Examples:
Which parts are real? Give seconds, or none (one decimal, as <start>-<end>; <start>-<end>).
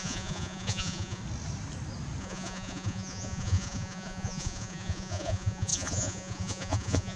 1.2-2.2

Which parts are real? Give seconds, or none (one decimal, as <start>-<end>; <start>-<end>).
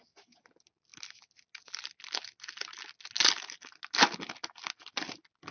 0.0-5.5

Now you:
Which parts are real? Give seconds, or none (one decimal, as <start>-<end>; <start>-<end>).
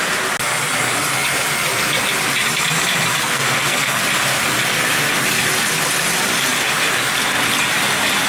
0.0-3.2; 4.0-8.3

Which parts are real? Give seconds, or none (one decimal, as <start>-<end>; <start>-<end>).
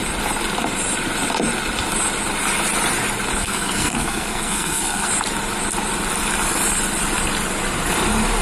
0.0-3.4; 5.1-8.4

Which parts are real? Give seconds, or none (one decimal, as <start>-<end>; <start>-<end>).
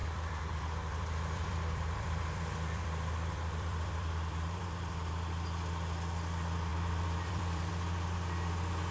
5.1-6.7; 7.7-8.9